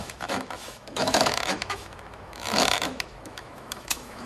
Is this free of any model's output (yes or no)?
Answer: no